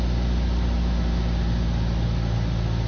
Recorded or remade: recorded